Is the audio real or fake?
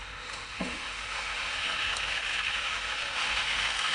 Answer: fake